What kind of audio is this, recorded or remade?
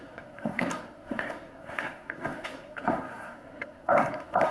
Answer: remade